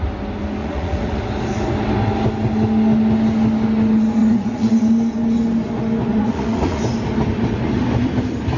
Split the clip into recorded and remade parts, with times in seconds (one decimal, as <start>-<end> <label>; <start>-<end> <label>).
0.0-0.6 recorded; 0.6-1.2 remade; 1.2-4.2 recorded; 4.2-4.9 remade; 4.9-6.1 recorded; 6.1-6.8 remade; 6.8-8.6 recorded